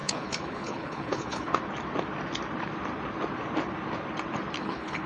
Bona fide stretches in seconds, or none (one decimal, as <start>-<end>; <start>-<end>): 1.5-4.6